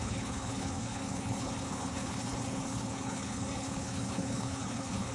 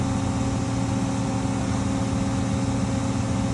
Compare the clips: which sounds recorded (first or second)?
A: second